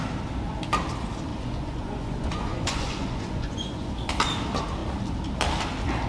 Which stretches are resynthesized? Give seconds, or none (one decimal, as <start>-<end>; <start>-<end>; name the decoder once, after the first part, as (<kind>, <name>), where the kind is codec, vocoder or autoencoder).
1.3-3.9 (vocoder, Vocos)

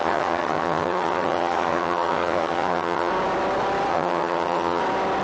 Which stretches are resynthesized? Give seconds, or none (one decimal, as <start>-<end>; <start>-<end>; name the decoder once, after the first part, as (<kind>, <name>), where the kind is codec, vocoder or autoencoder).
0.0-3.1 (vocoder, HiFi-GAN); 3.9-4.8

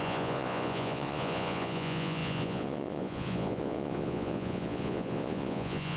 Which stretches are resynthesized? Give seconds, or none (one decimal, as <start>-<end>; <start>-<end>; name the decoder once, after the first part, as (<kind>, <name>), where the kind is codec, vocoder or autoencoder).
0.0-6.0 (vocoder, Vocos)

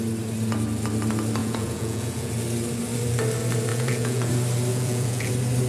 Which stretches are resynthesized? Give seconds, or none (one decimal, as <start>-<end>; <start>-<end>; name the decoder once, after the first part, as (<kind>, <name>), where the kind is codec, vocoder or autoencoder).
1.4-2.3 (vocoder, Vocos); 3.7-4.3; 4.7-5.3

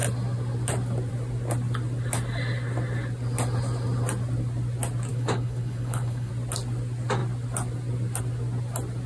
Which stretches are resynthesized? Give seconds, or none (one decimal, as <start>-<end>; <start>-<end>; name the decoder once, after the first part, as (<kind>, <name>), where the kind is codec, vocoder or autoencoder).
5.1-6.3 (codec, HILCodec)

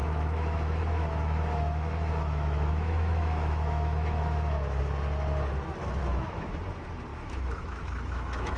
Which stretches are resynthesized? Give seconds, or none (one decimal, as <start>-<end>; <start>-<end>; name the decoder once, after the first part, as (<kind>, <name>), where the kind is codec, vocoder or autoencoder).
0.0-4.8 (autoencoder, DAC-VAE); 6.0-6.6; 7.1-8.6

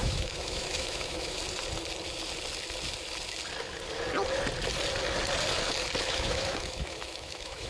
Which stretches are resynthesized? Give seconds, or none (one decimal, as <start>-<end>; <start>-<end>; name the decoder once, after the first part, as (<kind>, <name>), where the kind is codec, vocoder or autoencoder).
0.0-1.4 (autoencoder, DAC-VAE); 6.0-7.7